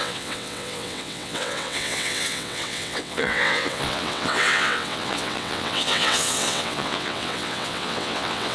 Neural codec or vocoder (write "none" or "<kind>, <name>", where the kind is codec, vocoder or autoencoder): vocoder, WaveNeXt